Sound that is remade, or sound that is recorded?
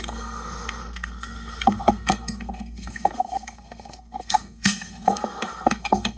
remade